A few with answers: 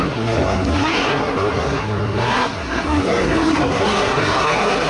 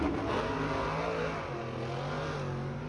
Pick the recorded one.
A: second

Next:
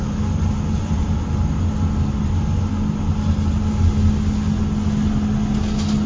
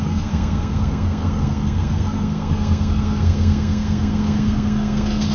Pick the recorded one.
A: first